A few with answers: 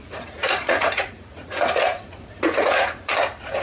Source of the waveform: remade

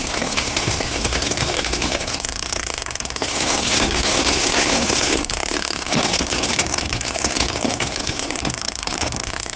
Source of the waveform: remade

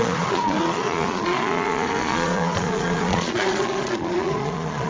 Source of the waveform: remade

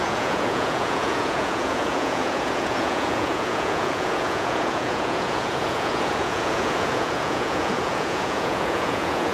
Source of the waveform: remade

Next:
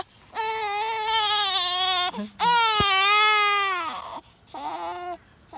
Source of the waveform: recorded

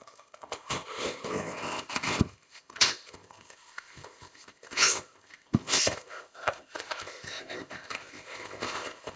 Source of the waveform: remade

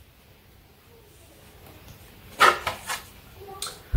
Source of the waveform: recorded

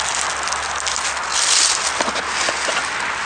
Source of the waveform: recorded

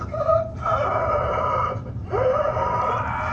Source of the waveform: remade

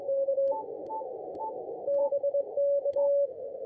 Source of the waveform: remade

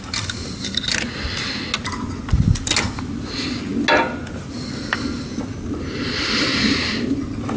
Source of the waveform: recorded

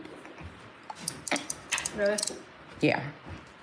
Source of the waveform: recorded